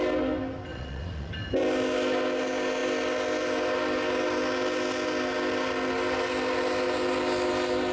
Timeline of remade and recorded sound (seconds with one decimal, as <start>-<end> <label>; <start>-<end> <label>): 0.0-0.7 recorded; 0.7-1.3 remade; 1.3-7.9 recorded